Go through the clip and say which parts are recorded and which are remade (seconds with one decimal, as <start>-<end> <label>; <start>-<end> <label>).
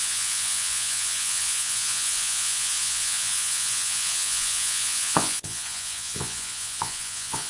0.0-7.5 remade